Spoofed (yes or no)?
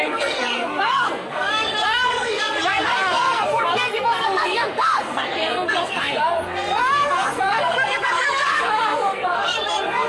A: yes